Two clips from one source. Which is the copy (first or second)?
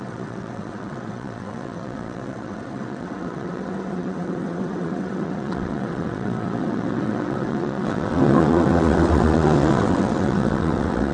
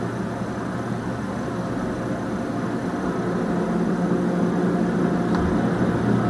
first